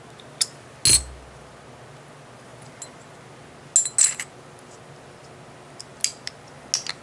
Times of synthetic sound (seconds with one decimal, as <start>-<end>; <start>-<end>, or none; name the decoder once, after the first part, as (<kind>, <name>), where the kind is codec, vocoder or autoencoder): none